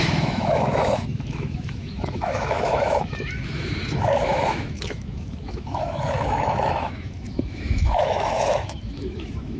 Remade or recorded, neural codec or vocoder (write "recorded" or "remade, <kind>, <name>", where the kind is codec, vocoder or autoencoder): remade, autoencoder, DAC-VAE